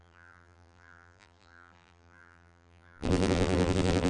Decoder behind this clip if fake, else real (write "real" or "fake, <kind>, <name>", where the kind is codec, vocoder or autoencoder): fake, vocoder, BigVGAN v2